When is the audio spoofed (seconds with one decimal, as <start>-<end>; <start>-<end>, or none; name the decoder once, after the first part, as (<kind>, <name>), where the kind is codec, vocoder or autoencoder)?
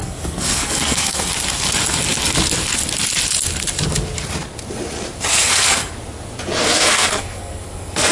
0.0-1.3 (codec, SNAC); 5.3-5.9; 6.6-8.1